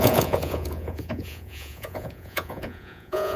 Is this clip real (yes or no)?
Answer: no